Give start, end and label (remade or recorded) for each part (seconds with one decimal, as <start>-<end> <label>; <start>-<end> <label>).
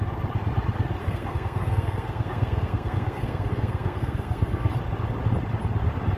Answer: 0.0-1.0 recorded; 1.0-4.7 remade; 4.7-6.2 recorded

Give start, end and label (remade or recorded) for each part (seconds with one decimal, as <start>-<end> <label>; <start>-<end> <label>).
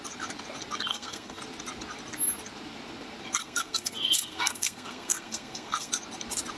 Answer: 0.0-0.9 recorded; 0.9-1.4 remade; 1.4-3.4 recorded; 3.4-5.9 remade; 5.9-6.6 recorded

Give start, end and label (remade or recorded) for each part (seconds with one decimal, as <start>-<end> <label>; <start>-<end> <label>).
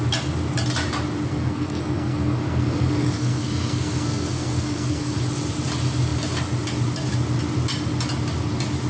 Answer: 0.0-1.3 recorded; 1.3-5.2 remade; 5.2-8.9 recorded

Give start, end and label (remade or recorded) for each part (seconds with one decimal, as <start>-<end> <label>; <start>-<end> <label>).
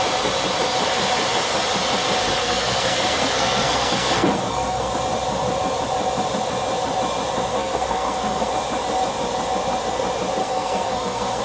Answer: 0.0-2.4 recorded; 2.4-4.9 remade; 4.9-7.5 recorded; 7.5-8.5 remade; 8.5-10.4 recorded; 10.4-11.4 remade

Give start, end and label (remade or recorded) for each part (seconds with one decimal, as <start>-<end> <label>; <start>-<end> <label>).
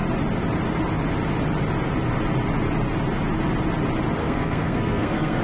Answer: 0.0-4.2 recorded; 4.2-5.4 remade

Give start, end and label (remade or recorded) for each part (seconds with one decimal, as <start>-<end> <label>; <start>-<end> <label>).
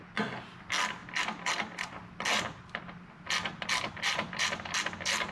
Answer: 0.0-5.3 recorded